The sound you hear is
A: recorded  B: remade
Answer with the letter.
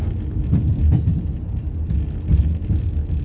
A